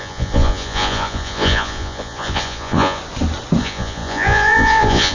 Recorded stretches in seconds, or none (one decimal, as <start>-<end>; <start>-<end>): 3.0-3.6